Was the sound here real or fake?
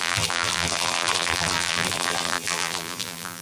fake